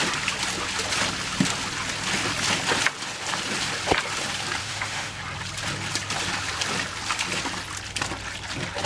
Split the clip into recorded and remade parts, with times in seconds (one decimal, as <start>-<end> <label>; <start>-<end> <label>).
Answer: 0.0-4.6 recorded; 4.6-5.2 remade; 5.2-8.9 recorded